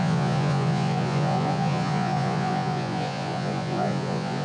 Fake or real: fake